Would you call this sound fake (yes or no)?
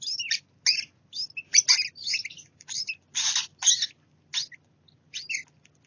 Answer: no